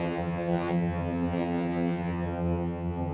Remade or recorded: remade